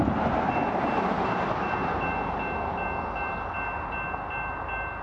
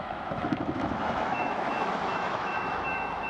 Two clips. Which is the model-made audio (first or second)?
second